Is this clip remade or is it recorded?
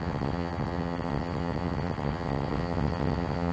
remade